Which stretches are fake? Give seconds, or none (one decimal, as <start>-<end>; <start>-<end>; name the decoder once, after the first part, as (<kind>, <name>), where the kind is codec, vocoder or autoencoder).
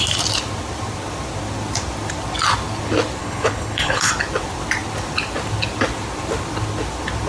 3.2-4.1 (codec, HILCodec)